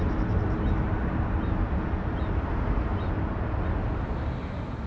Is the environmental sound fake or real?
real